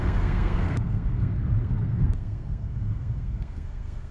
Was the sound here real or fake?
fake